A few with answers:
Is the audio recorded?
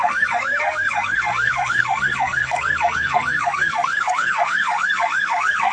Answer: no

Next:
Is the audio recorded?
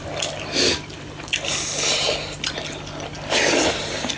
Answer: yes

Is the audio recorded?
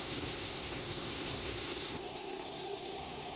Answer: no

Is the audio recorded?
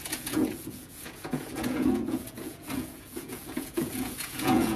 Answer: no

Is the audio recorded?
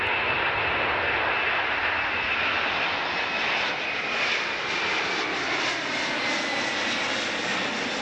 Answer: yes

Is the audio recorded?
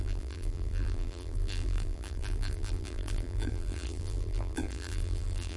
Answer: no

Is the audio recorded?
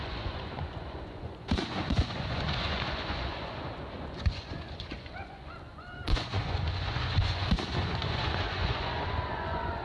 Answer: no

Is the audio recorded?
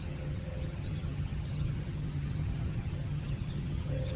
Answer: no